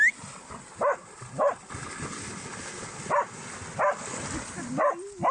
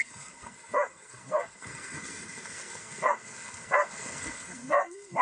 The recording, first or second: first